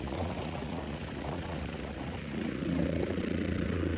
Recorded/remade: remade